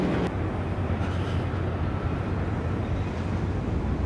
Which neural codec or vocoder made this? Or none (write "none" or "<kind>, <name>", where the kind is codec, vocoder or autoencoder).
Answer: vocoder, BigVGAN v2